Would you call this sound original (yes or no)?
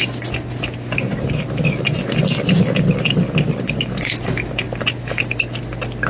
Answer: yes